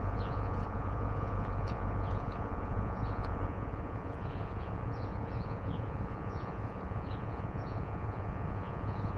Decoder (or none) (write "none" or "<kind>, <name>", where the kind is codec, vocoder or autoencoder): vocoder, Vocos